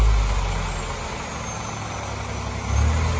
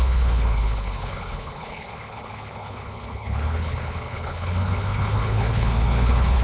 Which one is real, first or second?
first